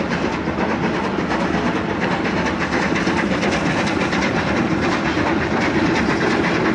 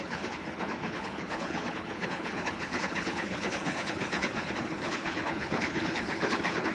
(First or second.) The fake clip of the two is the second